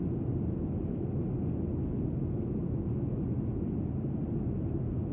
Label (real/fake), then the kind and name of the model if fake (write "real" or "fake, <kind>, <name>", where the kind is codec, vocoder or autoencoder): real